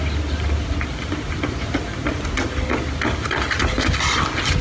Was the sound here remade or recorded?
recorded